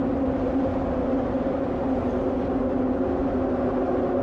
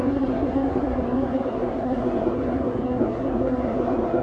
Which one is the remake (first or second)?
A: second